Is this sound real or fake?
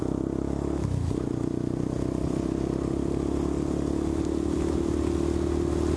real